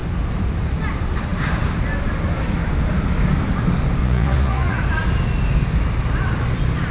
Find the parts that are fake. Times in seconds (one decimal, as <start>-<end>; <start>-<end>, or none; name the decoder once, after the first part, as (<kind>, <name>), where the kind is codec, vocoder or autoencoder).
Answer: 4.0-4.8 (vocoder, Vocos)